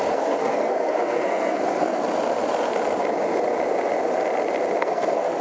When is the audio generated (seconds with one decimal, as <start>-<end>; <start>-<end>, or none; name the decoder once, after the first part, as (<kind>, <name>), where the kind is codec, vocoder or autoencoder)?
0.0-2.0 (codec, SNAC); 4.8-5.4